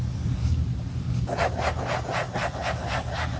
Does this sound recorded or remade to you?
recorded